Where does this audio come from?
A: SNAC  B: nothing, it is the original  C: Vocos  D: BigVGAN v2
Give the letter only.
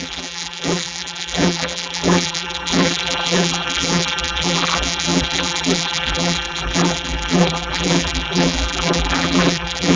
D